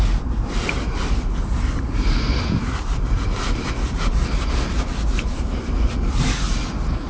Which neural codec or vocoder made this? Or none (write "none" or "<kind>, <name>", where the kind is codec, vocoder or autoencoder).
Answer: none